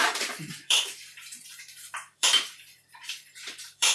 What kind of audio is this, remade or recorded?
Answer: remade